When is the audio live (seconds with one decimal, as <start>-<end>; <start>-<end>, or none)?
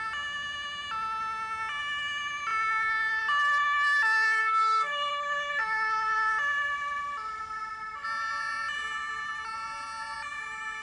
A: 0.0-4.4; 5.1-10.8